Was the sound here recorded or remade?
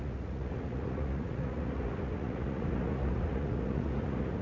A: remade